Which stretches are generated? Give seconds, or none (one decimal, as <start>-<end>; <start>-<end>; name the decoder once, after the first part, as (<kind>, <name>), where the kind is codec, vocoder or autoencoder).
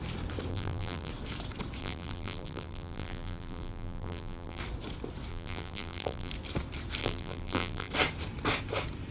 0.5-1.1 (vocoder, BigVGAN v2); 1.8-4.6; 5.3-6.3; 7.0-7.9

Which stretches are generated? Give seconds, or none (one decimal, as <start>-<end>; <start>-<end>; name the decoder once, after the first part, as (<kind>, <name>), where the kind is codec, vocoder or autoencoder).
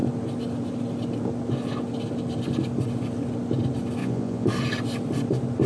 4.0-4.5 (vocoder, Vocos)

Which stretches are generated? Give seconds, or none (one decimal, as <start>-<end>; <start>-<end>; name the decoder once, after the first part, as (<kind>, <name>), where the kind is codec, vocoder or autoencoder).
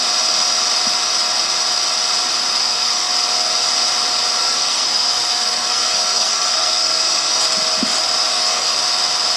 2.6-3.1 (codec, SNAC); 4.4-7.3; 8.3-8.8